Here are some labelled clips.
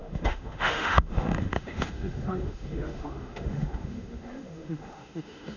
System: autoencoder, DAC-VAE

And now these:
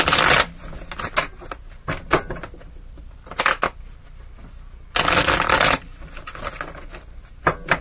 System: none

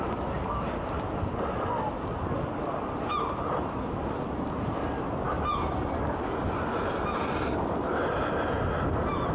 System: none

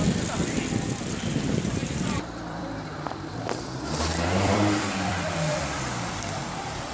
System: vocoder, BigVGAN v2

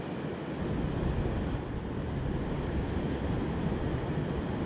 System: none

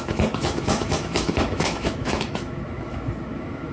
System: autoencoder, DAC-VAE